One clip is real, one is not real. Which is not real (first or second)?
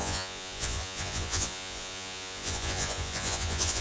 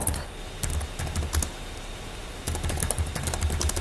first